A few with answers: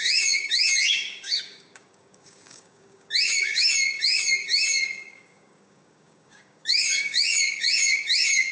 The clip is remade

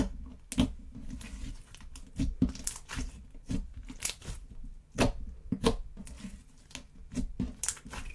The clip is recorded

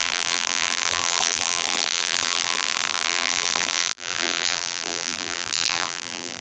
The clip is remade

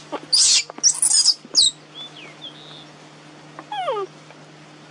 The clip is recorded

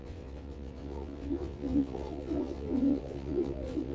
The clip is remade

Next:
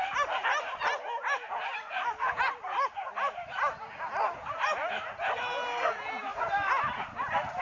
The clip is recorded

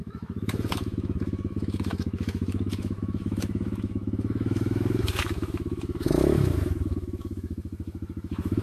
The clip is remade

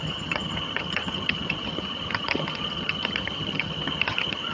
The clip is remade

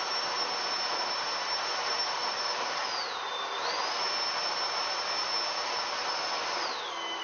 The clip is recorded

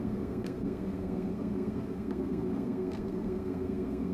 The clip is remade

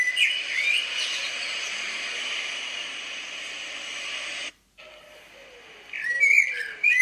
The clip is recorded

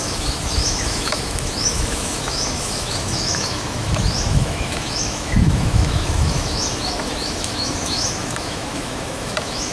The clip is remade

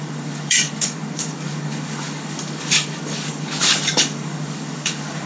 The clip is remade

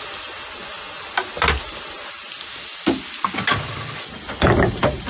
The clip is recorded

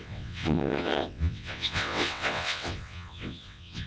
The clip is remade